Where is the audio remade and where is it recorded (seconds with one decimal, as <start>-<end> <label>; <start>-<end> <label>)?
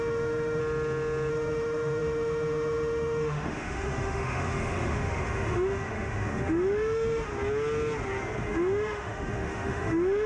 0.0-0.6 remade; 0.6-1.3 recorded; 1.3-7.3 remade; 7.3-8.4 recorded; 8.4-10.3 remade